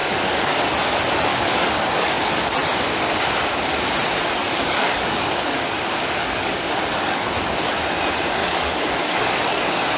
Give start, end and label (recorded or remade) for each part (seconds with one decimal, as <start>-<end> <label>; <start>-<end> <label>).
0.0-0.6 remade; 0.6-1.3 recorded; 1.3-2.3 remade; 2.3-4.4 recorded; 4.4-7.7 remade; 7.7-8.4 recorded; 8.4-10.0 remade